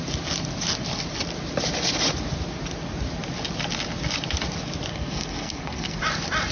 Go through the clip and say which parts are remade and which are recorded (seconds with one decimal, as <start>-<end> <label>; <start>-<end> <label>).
0.0-4.9 recorded; 4.9-6.0 remade; 6.0-6.5 recorded